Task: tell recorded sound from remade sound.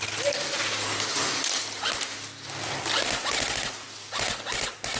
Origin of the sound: recorded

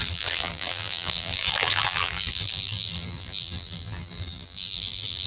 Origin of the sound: remade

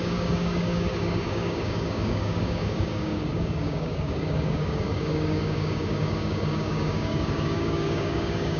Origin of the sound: remade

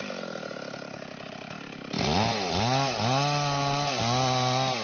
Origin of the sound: recorded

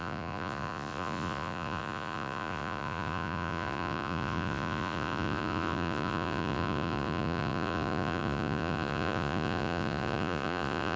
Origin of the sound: remade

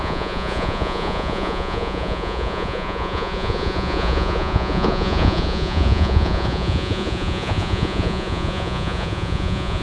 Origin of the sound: remade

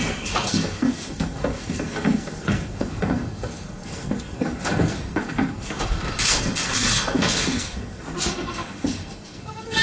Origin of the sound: remade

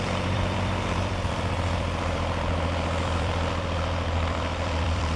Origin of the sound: remade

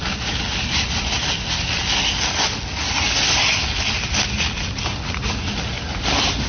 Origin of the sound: recorded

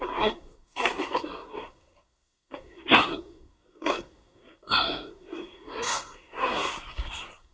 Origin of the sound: remade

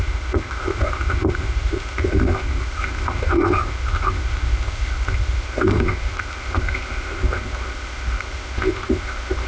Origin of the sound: remade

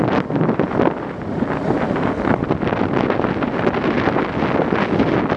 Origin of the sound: recorded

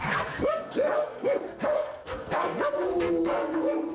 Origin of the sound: remade